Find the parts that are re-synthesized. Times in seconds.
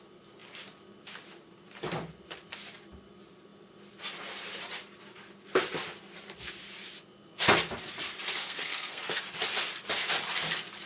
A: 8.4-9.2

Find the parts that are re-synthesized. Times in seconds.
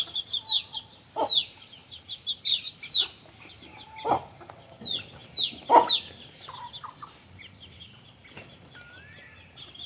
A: none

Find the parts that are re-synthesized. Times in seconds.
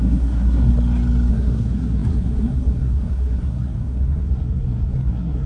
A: 0.0-0.7; 1.3-5.5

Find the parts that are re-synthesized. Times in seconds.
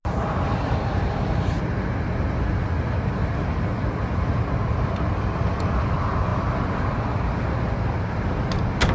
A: none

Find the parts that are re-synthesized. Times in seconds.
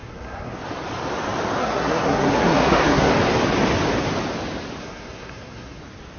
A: 0.0-0.6; 1.6-3.1; 4.8-5.8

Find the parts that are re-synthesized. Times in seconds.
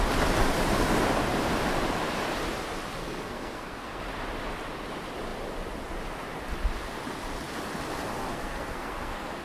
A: 3.0-4.0; 8.2-9.4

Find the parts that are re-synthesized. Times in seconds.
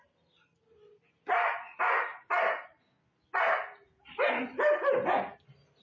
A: none